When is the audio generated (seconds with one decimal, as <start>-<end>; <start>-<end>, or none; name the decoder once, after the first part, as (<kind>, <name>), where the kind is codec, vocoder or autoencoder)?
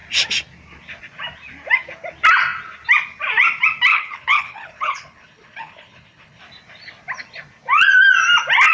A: 3.9-6.4 (codec, HILCodec)